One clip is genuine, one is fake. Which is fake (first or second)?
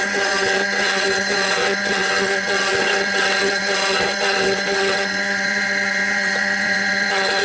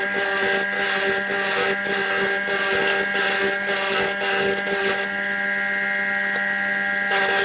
first